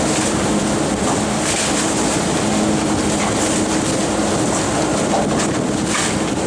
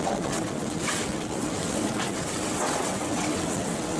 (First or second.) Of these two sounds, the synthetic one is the second